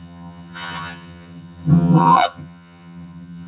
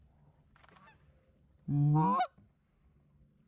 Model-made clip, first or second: first